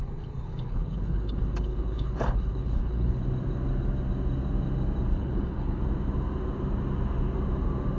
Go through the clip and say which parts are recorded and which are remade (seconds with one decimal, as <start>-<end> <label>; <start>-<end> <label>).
0.0-3.2 remade; 3.2-5.1 recorded; 5.1-5.8 remade; 5.8-8.0 recorded